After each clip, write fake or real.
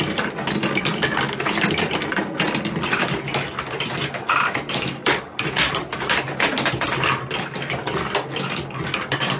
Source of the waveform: real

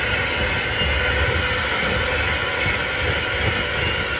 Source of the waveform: real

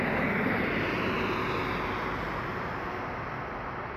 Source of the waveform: real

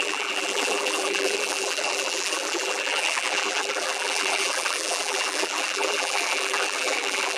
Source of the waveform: fake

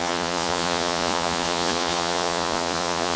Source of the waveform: fake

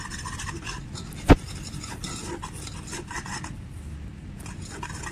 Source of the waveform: real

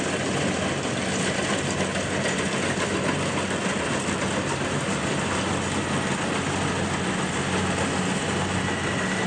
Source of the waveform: real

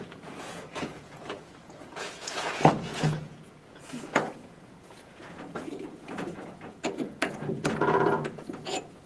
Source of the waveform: fake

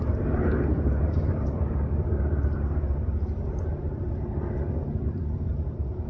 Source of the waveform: fake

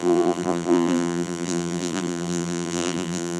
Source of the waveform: fake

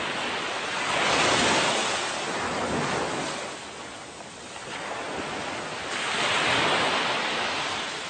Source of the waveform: real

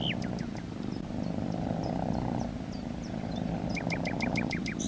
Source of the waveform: real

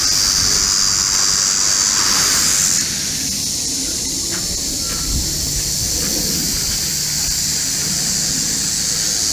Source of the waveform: real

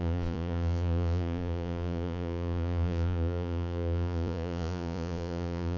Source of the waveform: fake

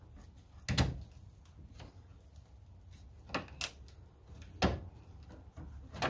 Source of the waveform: real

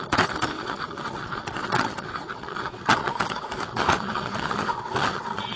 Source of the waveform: fake